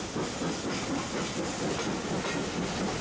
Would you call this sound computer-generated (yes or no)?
no